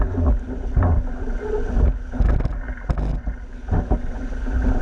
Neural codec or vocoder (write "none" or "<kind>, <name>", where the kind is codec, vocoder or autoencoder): none